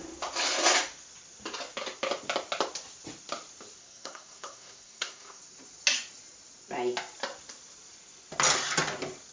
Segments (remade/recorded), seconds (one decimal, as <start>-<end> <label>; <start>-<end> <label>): 0.0-3.8 recorded; 3.8-5.4 remade; 5.4-9.3 recorded